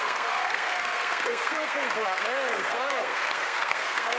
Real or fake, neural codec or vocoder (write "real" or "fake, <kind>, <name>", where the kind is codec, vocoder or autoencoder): fake, codec, SNAC